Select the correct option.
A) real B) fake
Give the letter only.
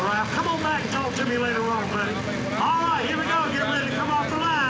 A